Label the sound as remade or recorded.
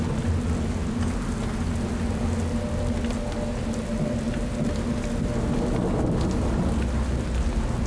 recorded